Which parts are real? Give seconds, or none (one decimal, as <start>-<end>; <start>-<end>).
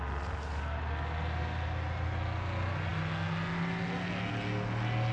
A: 0.0-5.1